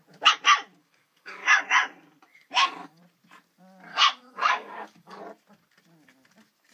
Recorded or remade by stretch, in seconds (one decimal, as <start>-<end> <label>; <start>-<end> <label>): 0.0-0.8 recorded; 0.8-1.6 remade; 1.6-2.3 recorded; 2.3-3.0 remade; 3.0-3.9 recorded; 3.9-5.2 remade; 5.2-6.7 recorded